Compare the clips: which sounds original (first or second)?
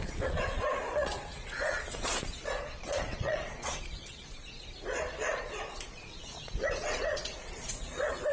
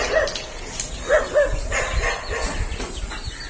second